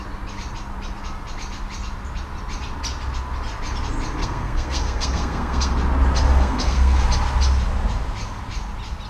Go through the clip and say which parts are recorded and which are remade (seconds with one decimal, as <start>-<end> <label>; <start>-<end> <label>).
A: 0.0-4.2 recorded; 4.2-5.7 remade; 5.7-6.3 recorded; 6.3-7.0 remade; 7.0-9.1 recorded